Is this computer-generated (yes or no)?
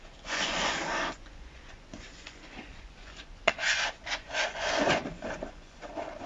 yes